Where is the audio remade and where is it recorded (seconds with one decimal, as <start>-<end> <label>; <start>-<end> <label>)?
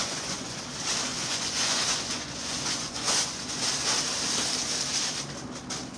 0.0-0.6 remade; 0.6-1.1 recorded; 1.1-3.6 remade; 3.6-6.0 recorded